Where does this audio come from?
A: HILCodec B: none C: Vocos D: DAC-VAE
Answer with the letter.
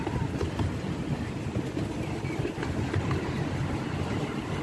B